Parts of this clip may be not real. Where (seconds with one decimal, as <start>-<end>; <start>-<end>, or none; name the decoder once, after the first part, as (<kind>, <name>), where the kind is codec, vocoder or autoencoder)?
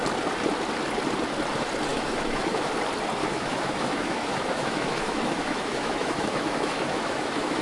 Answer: 1.9-2.7 (autoencoder, DAC-VAE); 3.2-7.6